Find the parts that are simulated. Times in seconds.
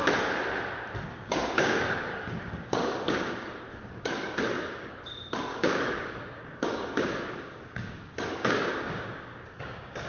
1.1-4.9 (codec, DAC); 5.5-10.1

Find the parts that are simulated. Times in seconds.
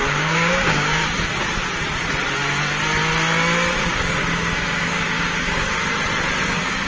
0.0-1.0 (codec, DAC); 3.7-5.8; 6.5-6.9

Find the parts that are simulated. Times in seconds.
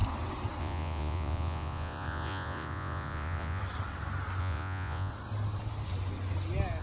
0.6-3.6 (vocoder, Vocos); 4.4-5.1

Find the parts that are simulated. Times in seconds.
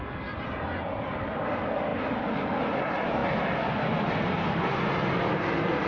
none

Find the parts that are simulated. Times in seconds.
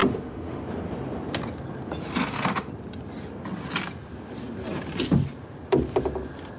0.0-0.6 (autoencoder, DAC-VAE); 2.2-2.7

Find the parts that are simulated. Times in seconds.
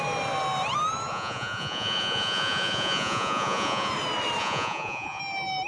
1.1-3.9 (vocoder, Vocos); 4.4-5.2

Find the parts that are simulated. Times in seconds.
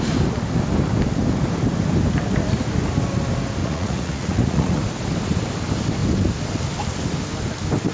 3.6-4.8 (vocoder, Vocos)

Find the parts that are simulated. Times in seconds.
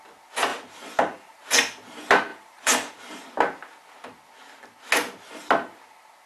0.5-1.4 (vocoder, BigVGAN v2); 2.3-3.2